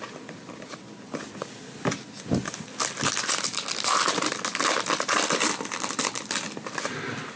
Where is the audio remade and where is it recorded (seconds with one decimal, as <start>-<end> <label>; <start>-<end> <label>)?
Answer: 0.0-7.4 recorded